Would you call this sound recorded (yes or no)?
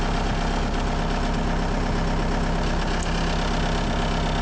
yes